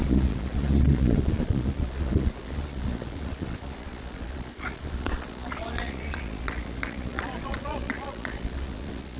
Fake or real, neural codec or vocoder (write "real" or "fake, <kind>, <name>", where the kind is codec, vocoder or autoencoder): fake, vocoder, Vocos